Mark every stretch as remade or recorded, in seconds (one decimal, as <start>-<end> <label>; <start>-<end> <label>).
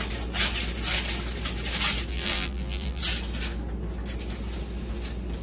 0.0-2.1 recorded; 2.1-3.0 remade; 3.0-5.4 recorded